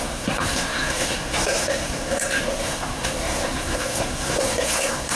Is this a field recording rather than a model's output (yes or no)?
no